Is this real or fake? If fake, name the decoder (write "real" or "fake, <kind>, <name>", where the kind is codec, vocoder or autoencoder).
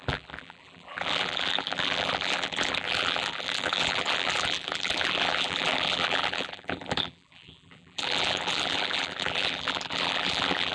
fake, vocoder, BigVGAN v2